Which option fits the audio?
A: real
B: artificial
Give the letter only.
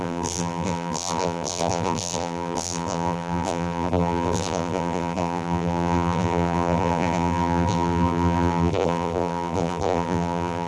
B